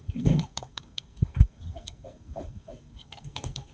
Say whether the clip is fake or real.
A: fake